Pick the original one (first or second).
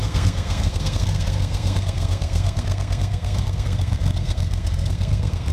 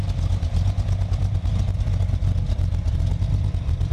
second